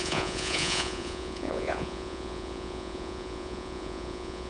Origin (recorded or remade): remade